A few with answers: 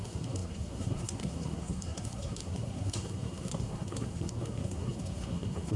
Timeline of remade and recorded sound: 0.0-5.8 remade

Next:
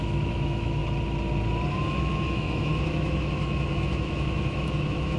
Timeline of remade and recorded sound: 0.0-0.8 remade; 0.8-2.0 recorded; 2.0-5.2 remade

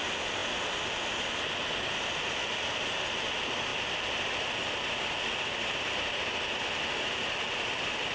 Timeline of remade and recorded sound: 0.0-3.7 recorded; 3.7-6.4 remade; 6.4-8.1 recorded

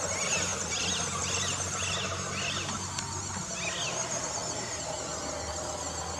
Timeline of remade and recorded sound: 0.0-6.2 recorded

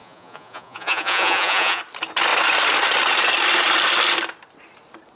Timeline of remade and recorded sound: 0.0-1.8 remade; 1.8-5.2 recorded